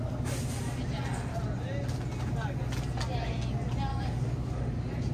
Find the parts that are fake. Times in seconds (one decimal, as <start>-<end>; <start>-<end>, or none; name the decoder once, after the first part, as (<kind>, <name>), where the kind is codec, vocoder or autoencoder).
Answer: 3.9-4.6 (codec, DAC)